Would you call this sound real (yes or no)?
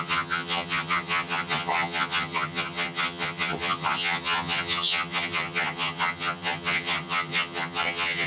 no